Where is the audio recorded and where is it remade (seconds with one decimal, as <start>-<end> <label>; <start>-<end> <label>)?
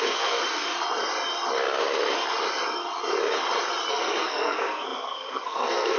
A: 0.0-0.4 remade; 0.4-3.9 recorded; 3.9-6.0 remade